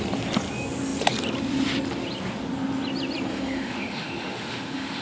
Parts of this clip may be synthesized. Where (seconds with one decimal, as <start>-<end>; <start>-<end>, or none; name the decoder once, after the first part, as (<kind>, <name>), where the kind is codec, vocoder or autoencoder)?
3.3-5.0 (autoencoder, DAC-VAE)